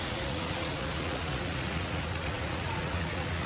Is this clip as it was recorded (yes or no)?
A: no